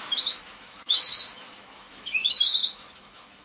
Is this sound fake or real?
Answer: fake